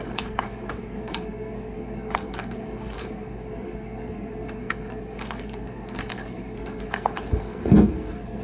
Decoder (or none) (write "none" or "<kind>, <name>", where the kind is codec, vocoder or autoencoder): codec, SNAC